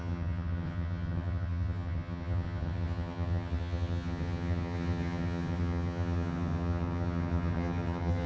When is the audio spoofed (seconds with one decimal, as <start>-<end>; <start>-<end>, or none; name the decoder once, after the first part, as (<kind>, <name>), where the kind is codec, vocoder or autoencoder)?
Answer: 0.0-8.3 (vocoder, HiFi-GAN)